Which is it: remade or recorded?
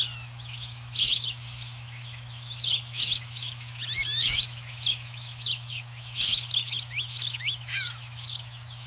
remade